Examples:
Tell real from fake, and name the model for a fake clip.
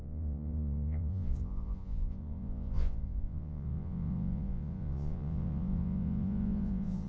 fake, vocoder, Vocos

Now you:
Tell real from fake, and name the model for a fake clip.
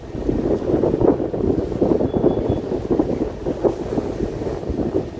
real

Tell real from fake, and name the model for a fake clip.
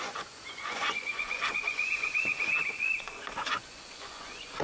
fake, vocoder, Vocos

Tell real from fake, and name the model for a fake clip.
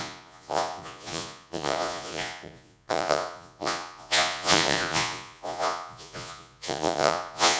fake, vocoder, Vocos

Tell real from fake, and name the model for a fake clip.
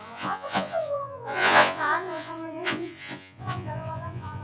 fake, vocoder, Vocos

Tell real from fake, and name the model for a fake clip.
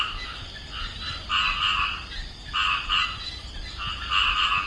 real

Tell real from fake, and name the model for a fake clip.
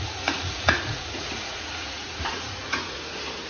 fake, vocoder, Vocos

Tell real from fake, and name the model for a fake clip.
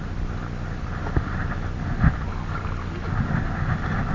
real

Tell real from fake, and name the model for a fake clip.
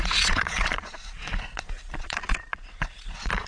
fake, vocoder, Vocos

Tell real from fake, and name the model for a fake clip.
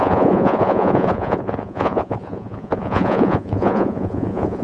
fake, vocoder, Vocos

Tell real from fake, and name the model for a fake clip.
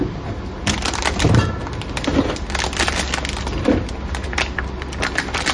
real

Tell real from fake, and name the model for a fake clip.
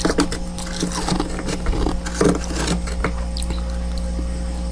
real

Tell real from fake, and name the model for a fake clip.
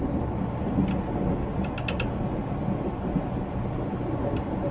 real